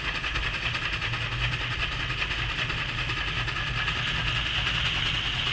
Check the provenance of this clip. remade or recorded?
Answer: recorded